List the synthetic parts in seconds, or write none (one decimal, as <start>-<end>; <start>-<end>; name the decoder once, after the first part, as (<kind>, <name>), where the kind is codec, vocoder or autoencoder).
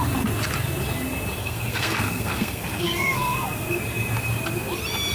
1.4-3.8 (codec, SNAC)